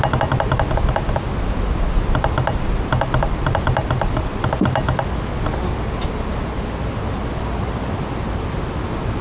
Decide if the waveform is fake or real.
real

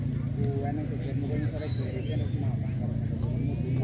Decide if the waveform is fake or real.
real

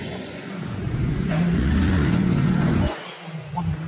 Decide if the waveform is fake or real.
fake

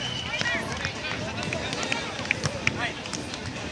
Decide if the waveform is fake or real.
real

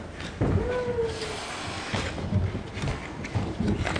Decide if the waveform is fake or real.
real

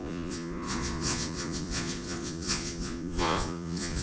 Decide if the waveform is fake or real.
fake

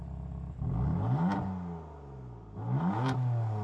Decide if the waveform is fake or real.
real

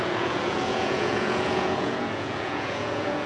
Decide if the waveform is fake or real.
fake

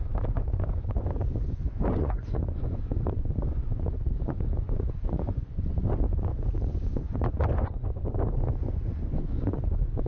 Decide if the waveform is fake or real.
fake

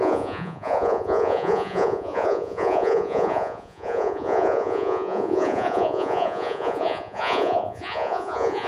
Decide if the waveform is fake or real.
fake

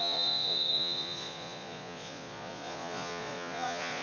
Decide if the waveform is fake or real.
fake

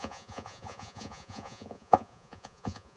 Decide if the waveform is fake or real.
fake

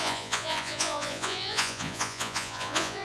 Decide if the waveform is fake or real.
fake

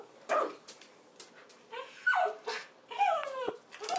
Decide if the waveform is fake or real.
real